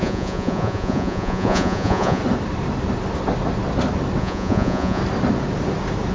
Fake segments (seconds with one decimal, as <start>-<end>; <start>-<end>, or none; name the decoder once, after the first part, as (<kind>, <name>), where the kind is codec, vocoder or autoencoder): 0.0-2.2 (vocoder, Vocos); 4.2-5.0